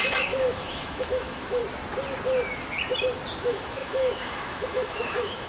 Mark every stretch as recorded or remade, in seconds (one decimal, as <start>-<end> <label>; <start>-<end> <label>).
0.0-1.6 remade; 1.6-3.4 recorded; 3.4-5.5 remade